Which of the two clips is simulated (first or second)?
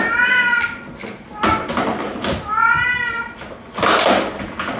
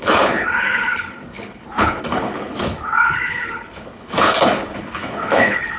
second